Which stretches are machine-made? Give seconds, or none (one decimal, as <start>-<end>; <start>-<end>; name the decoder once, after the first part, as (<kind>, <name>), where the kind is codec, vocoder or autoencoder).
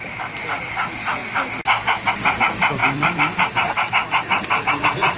0.0-1.2 (vocoder, BigVGAN v2); 2.1-5.2